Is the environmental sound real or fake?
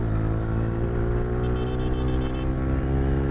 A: real